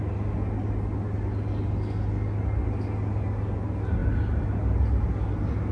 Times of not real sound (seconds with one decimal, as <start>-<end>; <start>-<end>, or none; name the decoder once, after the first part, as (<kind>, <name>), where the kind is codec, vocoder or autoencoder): none